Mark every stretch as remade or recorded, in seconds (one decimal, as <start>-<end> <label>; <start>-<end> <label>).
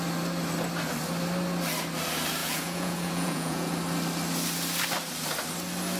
0.0-2.4 recorded; 2.4-3.7 remade; 3.7-6.0 recorded